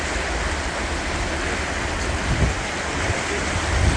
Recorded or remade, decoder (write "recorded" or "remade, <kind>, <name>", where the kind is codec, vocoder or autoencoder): recorded